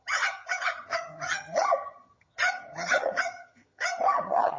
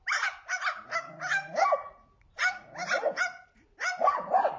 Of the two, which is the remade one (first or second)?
first